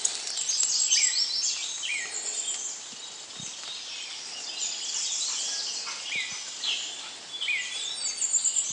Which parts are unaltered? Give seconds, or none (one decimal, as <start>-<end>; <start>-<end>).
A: 0.0-8.7